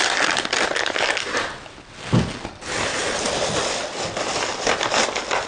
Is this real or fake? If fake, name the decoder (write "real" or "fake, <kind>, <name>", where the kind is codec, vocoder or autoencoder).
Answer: real